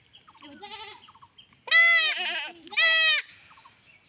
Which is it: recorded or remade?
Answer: recorded